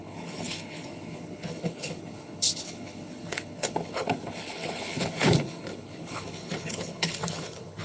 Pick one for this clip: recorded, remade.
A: remade